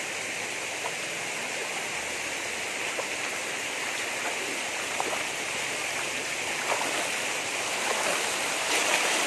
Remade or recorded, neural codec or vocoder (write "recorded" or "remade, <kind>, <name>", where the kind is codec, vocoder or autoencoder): recorded